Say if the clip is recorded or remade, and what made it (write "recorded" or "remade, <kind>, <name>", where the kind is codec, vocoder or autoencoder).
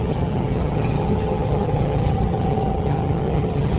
remade, vocoder, HiFi-GAN